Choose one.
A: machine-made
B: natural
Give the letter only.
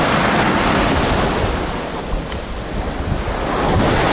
B